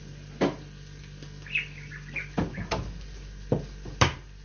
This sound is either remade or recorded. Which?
recorded